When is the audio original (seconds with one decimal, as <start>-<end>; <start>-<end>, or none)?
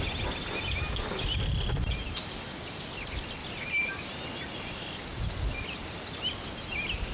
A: 0.0-3.4; 3.9-7.1